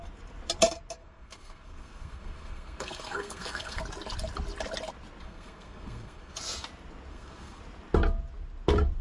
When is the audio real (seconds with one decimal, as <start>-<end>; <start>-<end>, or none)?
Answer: 0.0-1.0; 3.8-5.2; 6.4-7.1; 7.6-9.0